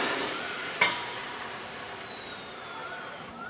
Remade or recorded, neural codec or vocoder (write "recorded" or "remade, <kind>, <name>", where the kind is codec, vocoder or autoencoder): remade, vocoder, BigVGAN v2